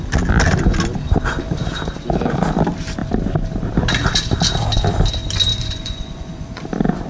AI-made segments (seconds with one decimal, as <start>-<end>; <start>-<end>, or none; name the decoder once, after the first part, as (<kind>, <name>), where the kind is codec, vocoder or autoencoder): 5.5-6.6 (vocoder, Vocos)